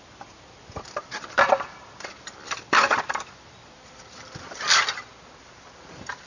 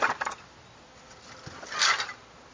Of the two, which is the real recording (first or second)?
second